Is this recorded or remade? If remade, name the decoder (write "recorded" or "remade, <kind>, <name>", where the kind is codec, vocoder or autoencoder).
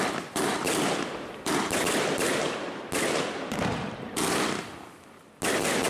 recorded